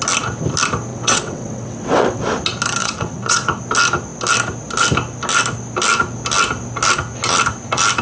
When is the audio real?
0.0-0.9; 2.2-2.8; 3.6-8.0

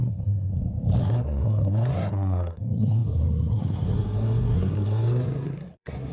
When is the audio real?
0.5-1.0

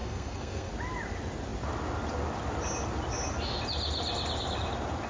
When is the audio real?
0.7-5.1

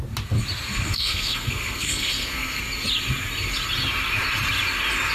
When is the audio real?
0.0-0.7; 2.6-5.1